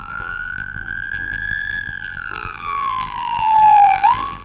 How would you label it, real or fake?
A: fake